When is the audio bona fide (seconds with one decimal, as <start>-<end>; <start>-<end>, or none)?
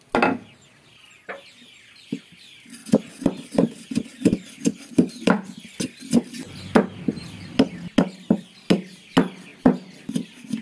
0.0-10.6